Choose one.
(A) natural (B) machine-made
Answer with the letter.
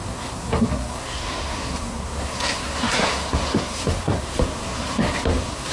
B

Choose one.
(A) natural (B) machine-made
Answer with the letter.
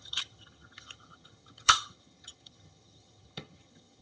B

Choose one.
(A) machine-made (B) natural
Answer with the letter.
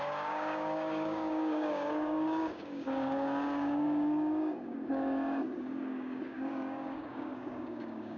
A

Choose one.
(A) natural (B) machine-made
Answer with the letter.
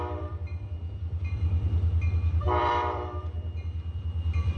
B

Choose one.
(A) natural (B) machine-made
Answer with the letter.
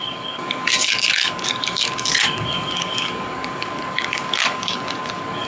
B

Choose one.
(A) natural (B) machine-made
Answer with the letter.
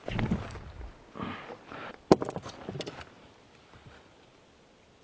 A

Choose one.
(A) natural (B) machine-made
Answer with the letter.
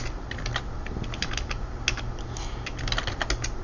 A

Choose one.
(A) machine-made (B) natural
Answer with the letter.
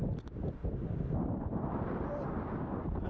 B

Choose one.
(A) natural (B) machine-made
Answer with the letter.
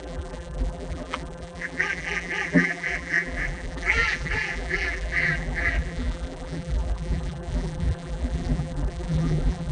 B